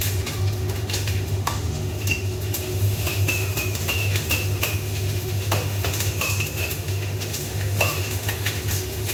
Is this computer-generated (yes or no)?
yes